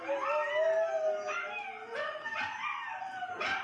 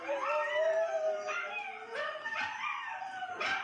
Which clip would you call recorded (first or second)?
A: first